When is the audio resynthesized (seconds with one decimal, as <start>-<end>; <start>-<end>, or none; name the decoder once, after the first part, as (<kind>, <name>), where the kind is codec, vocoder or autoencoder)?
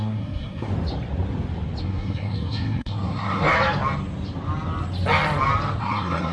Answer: 0.0-0.7 (codec, SNAC); 1.8-3.5; 5.8-6.3